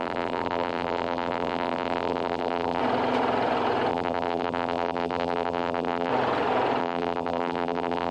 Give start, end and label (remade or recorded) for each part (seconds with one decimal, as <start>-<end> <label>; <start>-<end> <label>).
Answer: 0.0-2.8 remade; 2.8-3.9 recorded; 3.9-6.1 remade; 6.1-6.8 recorded; 6.8-8.1 remade